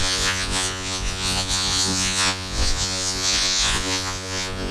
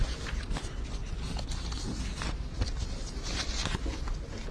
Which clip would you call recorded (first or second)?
second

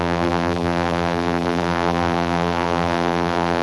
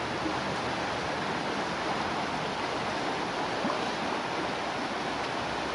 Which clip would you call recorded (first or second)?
second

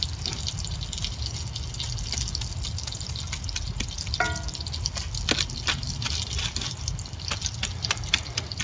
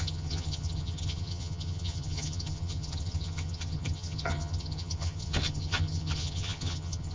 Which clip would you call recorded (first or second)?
first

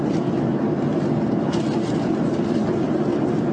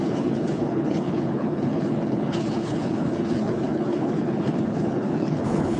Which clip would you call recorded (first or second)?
first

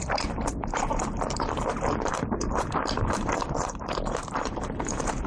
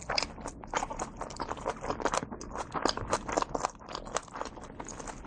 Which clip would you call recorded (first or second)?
second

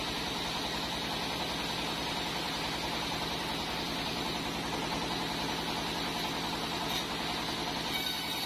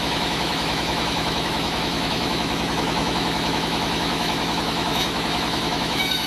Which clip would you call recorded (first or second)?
first